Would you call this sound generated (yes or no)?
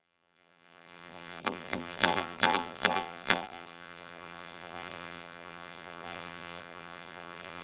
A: yes